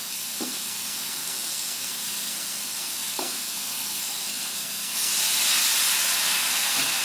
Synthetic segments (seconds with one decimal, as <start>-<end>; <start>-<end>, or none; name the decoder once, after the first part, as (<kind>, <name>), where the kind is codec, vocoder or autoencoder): 0.0-5.1 (codec, SNAC); 6.2-7.0